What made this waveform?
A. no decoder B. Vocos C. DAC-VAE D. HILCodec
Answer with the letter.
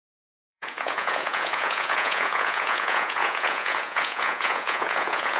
B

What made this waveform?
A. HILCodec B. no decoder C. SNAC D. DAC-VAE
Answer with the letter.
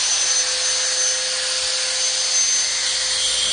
B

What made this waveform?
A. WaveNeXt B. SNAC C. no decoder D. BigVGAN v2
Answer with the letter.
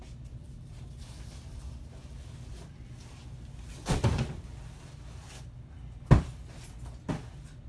C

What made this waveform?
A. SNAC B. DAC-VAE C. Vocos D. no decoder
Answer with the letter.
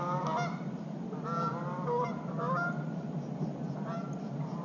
D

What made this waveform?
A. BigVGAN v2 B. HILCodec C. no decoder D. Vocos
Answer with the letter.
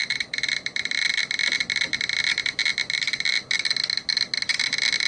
C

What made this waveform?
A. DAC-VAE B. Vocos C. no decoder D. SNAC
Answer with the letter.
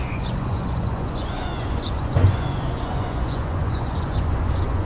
B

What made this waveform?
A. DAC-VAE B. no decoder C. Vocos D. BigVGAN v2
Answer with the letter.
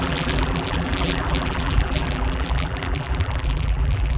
D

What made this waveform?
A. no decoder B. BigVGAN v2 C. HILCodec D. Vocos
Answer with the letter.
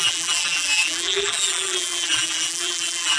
B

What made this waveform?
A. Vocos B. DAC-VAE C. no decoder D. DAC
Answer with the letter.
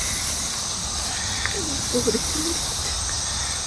C